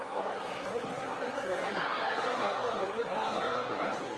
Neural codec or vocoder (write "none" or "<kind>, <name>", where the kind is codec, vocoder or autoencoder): codec, SNAC